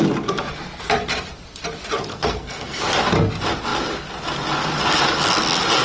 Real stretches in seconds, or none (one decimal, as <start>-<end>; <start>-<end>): 0.0-2.1; 2.8-5.8